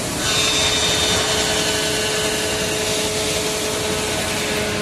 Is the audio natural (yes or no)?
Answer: yes